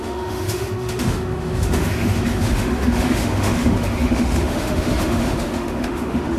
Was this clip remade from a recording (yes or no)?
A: yes